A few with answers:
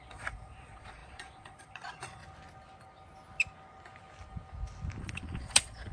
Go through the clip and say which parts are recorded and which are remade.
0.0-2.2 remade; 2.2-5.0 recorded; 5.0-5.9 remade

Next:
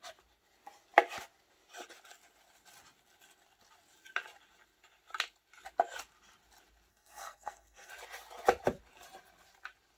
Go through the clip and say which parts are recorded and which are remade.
0.0-6.9 recorded; 6.9-7.9 remade; 7.9-10.0 recorded

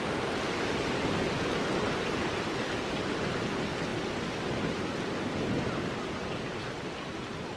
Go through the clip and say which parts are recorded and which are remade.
0.0-7.6 recorded

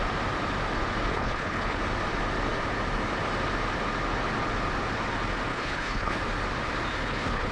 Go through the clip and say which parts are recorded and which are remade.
0.0-1.1 recorded; 1.1-1.8 remade; 1.8-5.5 recorded; 5.5-6.2 remade; 6.2-6.9 recorded; 6.9-7.5 remade

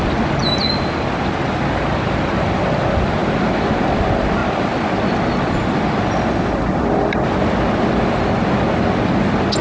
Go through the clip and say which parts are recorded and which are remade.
0.0-9.6 recorded